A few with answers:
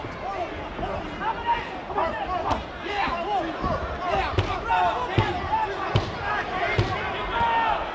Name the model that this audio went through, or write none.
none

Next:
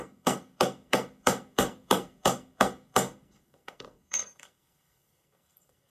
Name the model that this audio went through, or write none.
codec, SNAC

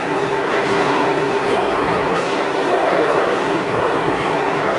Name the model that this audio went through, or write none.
codec, SNAC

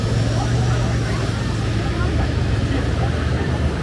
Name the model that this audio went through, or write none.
none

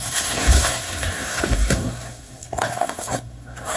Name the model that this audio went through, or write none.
codec, SNAC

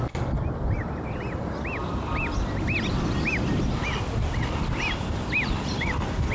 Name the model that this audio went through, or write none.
none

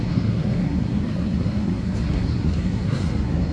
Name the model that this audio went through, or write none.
codec, SNAC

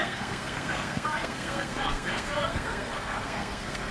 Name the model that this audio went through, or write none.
codec, SNAC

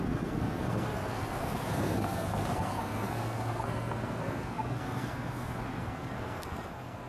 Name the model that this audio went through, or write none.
codec, SNAC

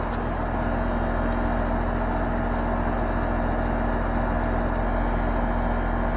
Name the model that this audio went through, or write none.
none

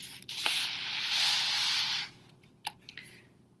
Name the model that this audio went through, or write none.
none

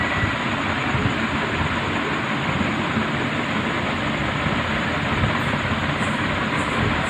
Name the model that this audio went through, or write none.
none